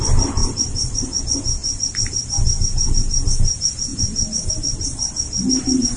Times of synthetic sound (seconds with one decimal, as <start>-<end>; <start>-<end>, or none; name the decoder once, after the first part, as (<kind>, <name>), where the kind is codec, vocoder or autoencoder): none